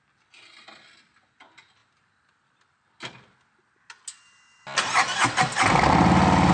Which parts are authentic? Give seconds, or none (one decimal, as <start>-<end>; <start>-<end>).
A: 0.0-6.5